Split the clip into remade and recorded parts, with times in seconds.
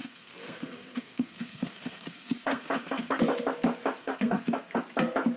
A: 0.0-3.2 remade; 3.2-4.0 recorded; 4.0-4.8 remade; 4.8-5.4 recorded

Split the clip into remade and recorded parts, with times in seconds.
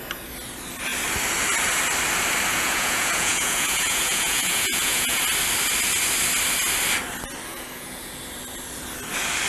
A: 0.0-2.5 recorded; 2.5-5.2 remade; 5.2-7.5 recorded; 7.5-8.1 remade; 8.1-9.5 recorded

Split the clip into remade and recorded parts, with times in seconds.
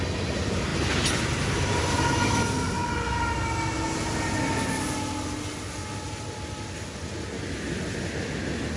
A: 0.0-8.8 recorded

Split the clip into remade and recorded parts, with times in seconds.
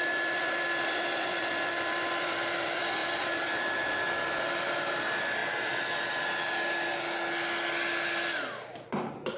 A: 0.0-3.0 recorded; 3.0-3.5 remade; 3.5-9.4 recorded